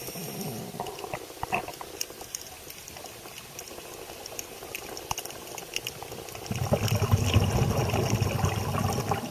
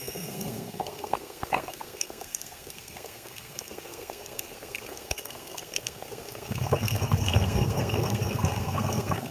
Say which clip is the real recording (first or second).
first